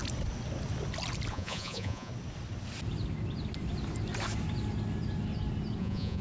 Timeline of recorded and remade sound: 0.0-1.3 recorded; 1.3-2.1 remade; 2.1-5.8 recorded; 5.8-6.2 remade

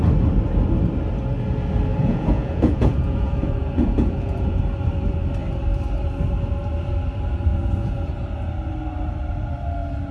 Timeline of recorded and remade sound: 0.0-1.9 recorded; 1.9-4.6 remade; 4.6-7.5 recorded; 7.5-8.1 remade; 8.1-10.1 recorded

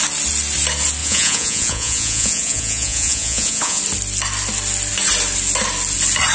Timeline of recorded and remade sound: 0.0-1.0 recorded; 1.0-3.8 remade; 3.8-6.3 recorded

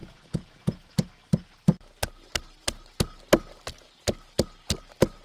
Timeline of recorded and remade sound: 0.0-0.9 remade; 0.9-5.2 recorded

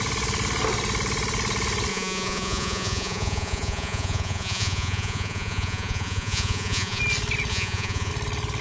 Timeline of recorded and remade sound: 0.0-1.9 recorded; 1.9-7.0 remade; 7.0-7.5 recorded; 7.5-8.1 remade; 8.1-8.6 recorded

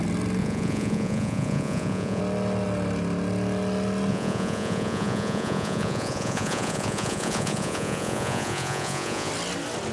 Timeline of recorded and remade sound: 0.0-0.4 recorded; 0.4-2.2 remade; 2.2-4.1 recorded; 4.1-9.3 remade; 9.3-9.9 recorded

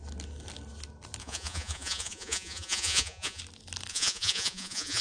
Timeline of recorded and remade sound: 0.0-1.2 recorded; 1.2-3.4 remade; 3.4-3.9 recorded; 3.9-5.0 remade